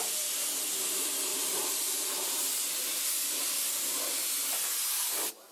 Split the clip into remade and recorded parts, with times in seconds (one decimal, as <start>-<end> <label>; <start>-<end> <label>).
0.0-1.3 recorded; 1.3-2.7 remade; 2.7-5.5 recorded